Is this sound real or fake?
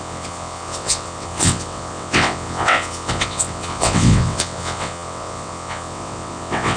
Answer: fake